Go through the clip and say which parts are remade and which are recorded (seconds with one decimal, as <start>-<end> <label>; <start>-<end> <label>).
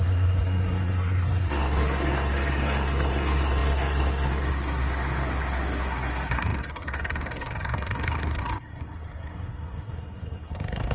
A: 0.0-10.9 remade